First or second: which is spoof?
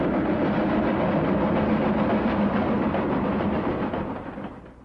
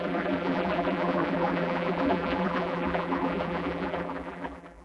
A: second